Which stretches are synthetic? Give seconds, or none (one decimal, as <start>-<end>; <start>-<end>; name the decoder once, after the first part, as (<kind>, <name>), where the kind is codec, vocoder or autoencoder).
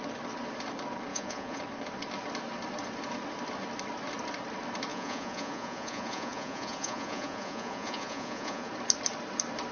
1.1-1.6 (vocoder, Vocos); 4.9-8.7